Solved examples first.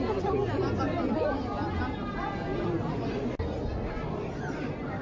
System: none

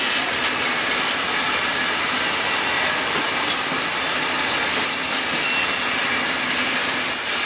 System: none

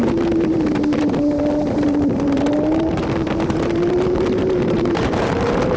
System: vocoder, BigVGAN v2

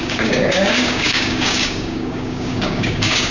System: codec, DAC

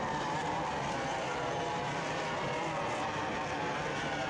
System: none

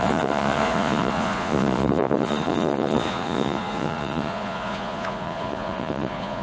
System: vocoder, Vocos